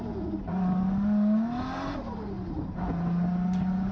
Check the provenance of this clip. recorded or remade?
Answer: recorded